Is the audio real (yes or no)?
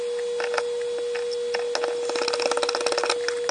yes